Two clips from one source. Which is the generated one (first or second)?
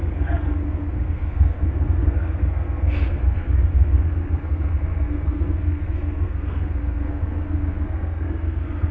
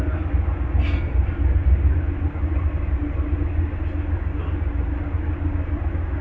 first